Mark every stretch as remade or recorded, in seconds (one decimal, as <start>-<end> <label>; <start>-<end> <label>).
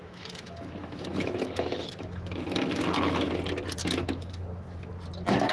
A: 0.0-3.3 remade; 3.3-3.8 recorded; 3.8-4.9 remade; 4.9-5.5 recorded